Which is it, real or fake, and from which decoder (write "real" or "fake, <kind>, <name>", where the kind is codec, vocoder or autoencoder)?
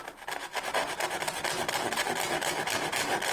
real